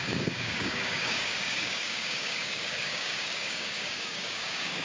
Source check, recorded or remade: remade